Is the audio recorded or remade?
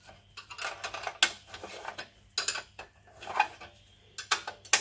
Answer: recorded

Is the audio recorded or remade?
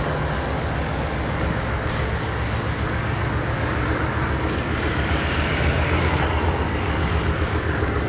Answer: remade